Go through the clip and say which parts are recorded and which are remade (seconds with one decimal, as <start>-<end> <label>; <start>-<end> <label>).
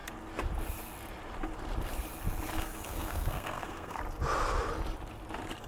0.0-2.5 recorded; 2.5-4.0 remade; 4.0-5.7 recorded